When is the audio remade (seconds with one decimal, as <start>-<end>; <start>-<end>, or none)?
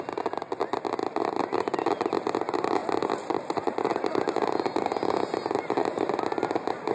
none